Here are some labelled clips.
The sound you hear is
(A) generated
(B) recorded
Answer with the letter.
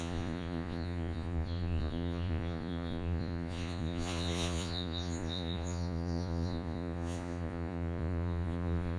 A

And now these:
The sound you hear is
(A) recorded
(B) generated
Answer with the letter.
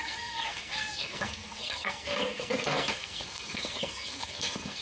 B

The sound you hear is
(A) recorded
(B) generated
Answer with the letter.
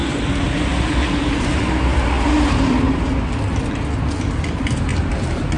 A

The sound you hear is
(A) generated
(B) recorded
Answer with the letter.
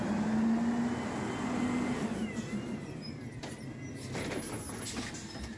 B